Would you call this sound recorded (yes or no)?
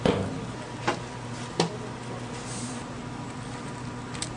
yes